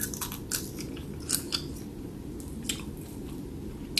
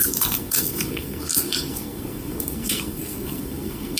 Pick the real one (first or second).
first